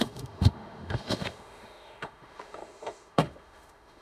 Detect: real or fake fake